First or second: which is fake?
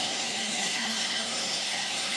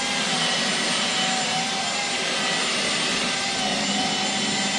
first